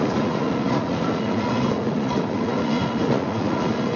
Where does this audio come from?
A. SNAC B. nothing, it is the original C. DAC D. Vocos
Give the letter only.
D